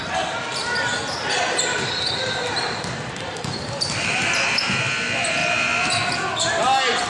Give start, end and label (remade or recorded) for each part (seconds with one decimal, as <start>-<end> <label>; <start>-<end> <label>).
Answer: 0.0-7.1 recorded